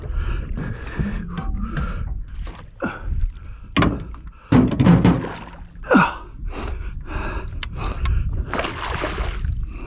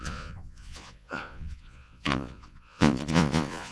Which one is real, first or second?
first